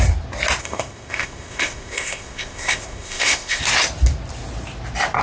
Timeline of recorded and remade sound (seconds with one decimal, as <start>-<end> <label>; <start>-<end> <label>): 0.0-0.6 recorded; 0.6-3.6 remade; 3.6-5.2 recorded